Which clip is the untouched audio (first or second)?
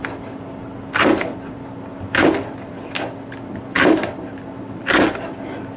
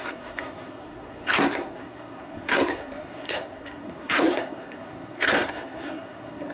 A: first